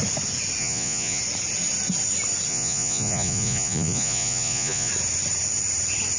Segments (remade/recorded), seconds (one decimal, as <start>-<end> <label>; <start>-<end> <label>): 0.0-0.6 recorded; 0.6-1.2 remade; 1.2-2.5 recorded; 2.5-4.9 remade; 4.9-6.2 recorded